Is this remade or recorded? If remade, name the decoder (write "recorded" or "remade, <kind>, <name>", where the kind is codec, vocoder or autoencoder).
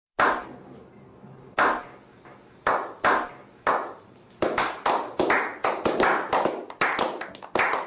recorded